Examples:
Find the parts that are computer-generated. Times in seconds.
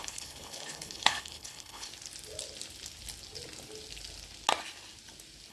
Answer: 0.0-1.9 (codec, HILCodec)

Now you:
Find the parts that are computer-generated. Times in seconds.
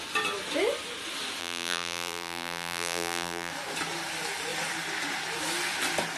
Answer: 1.4-3.5 (vocoder, BigVGAN v2)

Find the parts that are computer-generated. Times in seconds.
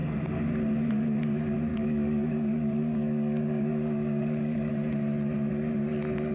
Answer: 1.7-4.7 (codec, DAC)